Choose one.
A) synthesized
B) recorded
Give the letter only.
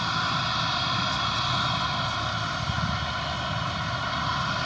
B